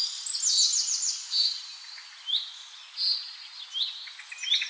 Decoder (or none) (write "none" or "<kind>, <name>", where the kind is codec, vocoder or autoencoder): none